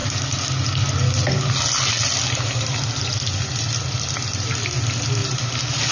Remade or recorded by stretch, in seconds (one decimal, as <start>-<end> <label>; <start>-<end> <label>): 0.0-5.9 recorded